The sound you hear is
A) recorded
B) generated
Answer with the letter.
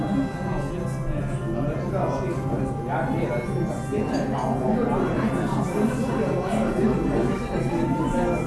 A